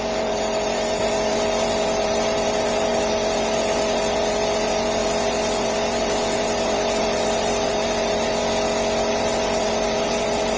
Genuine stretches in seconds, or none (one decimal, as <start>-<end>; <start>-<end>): 8.4-9.1